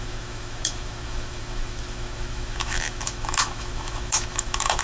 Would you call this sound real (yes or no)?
no